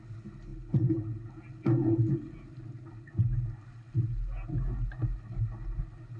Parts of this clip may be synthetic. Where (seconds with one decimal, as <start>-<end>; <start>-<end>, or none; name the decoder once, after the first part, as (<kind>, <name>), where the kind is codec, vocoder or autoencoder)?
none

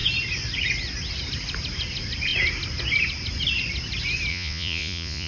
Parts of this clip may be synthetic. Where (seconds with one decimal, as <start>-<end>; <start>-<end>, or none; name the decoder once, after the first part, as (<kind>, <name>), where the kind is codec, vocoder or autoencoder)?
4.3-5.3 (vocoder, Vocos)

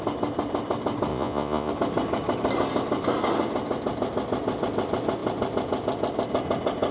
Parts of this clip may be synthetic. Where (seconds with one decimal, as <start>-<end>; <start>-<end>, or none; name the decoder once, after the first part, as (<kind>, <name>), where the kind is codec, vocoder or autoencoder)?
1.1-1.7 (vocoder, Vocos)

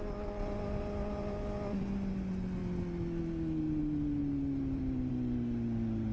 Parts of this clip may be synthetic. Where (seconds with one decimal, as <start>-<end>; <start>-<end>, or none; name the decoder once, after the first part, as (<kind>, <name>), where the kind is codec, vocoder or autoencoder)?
none